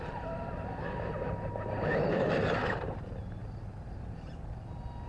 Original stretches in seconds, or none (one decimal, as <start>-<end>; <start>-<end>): 0.0-5.1